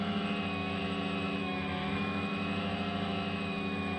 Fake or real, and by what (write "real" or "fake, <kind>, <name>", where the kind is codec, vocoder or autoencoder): fake, autoencoder, DAC-VAE